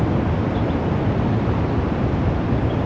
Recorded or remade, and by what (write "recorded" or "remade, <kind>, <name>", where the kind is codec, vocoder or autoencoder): recorded